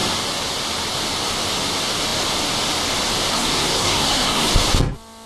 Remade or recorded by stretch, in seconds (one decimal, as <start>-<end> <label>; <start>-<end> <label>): 0.0-3.3 recorded; 3.3-4.5 remade; 4.5-5.3 recorded